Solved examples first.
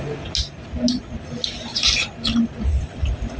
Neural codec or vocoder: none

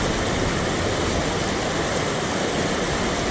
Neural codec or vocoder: none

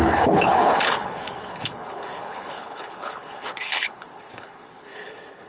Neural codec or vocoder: codec, HILCodec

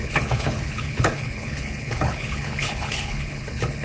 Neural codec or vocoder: codec, HILCodec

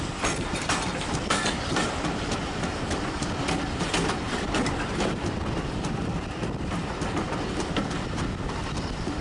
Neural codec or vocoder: none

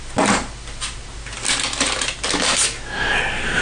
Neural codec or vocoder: none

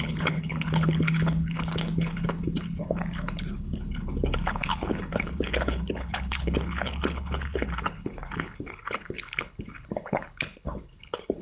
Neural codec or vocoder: codec, HILCodec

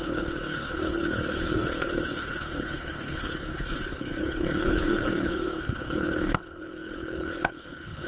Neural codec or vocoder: codec, HILCodec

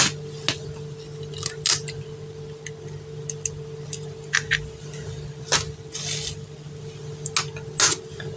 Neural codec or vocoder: none